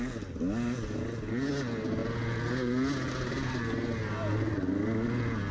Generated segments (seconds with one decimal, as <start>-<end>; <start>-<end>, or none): none